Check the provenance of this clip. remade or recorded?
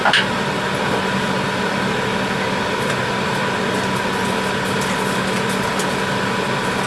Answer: recorded